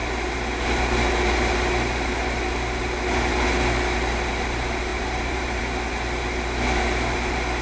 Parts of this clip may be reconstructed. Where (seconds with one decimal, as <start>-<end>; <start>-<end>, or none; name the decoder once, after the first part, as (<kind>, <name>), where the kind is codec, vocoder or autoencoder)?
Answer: 4.9-5.6 (vocoder, BigVGAN v2)